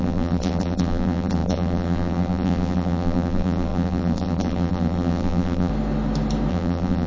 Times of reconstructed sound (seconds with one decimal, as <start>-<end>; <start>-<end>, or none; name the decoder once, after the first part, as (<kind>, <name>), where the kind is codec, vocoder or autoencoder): 0.0-5.7 (vocoder, BigVGAN v2); 6.5-7.1